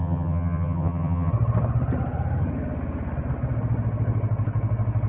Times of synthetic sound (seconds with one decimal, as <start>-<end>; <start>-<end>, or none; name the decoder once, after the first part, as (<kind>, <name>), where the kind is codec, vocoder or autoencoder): 0.0-1.3 (vocoder, HiFi-GAN)